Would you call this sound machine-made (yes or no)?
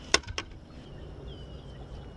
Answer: no